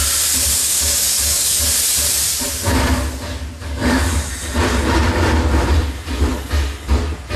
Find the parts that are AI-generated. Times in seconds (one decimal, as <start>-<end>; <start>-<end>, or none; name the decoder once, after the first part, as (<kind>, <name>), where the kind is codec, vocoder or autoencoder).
0.6-1.6 (codec, DAC); 3.6-4.3